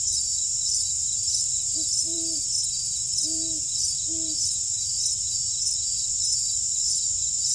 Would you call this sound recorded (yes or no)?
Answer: no